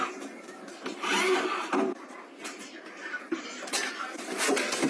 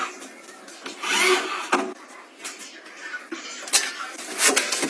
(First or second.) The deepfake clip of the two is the first